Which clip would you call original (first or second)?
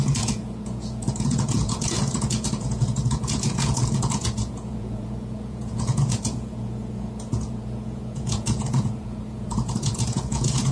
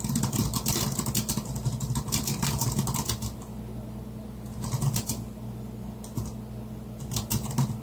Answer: second